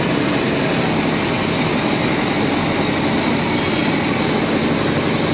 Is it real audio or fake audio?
real